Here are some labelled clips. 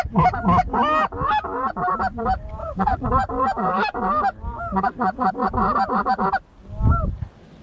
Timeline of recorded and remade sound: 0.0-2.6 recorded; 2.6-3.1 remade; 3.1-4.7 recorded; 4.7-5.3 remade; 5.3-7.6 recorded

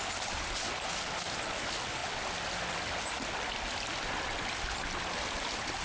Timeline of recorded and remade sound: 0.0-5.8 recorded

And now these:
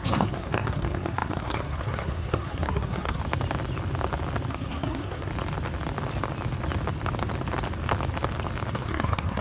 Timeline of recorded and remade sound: 0.0-3.2 remade; 3.2-4.5 recorded; 4.5-5.3 remade; 5.3-8.7 recorded; 8.7-9.4 remade